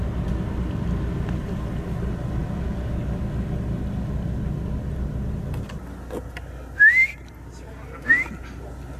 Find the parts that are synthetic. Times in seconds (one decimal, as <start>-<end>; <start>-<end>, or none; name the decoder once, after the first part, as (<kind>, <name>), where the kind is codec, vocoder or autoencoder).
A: none